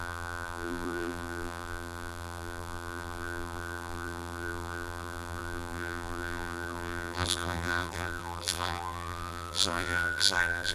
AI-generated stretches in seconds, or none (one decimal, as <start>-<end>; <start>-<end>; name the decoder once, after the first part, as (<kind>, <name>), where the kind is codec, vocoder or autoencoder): 0.0-10.7 (vocoder, BigVGAN v2)

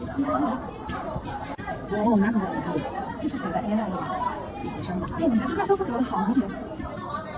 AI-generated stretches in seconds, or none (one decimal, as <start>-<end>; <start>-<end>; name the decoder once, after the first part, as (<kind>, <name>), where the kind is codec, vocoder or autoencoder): 0.0-7.4 (vocoder, BigVGAN v2)

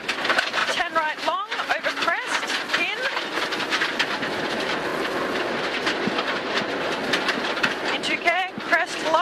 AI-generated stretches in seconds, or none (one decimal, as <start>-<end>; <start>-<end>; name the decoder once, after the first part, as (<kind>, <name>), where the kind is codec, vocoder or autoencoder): 0.0-4.9 (vocoder, BigVGAN v2); 5.6-9.2

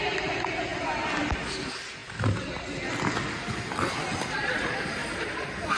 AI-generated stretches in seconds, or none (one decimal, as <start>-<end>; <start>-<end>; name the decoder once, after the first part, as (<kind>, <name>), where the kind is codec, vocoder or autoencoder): 5.0-5.8 (vocoder, BigVGAN v2)

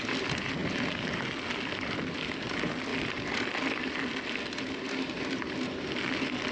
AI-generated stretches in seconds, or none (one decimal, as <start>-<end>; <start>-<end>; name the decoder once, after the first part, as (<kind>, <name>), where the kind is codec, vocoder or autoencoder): 2.9-4.2 (vocoder, BigVGAN v2)

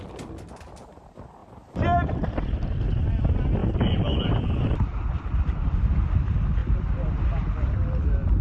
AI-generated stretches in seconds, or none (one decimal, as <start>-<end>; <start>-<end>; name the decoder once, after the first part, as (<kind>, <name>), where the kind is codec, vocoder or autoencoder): 3.6-5.9 (vocoder, BigVGAN v2); 6.6-8.0